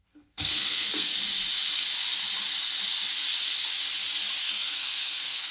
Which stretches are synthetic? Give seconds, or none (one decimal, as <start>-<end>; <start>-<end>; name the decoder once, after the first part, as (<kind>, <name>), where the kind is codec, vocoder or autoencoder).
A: 0.0-1.1 (codec, SNAC); 4.4-5.5